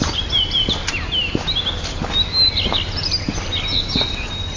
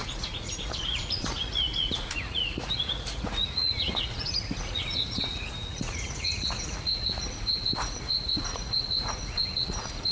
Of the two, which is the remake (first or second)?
second